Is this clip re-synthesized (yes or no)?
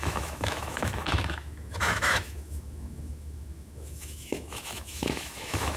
yes